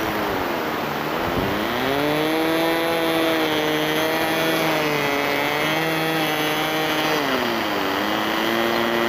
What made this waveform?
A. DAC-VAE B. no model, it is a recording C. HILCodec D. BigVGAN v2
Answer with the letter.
B